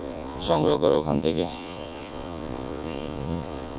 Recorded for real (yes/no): no